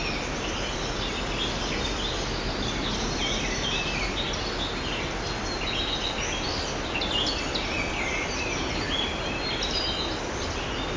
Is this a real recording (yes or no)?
yes